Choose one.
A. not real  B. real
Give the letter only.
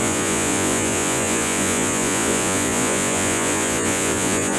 A